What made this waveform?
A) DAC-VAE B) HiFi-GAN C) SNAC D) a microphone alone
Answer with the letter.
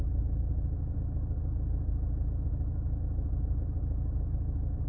D